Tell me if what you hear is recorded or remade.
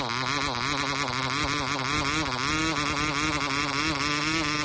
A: recorded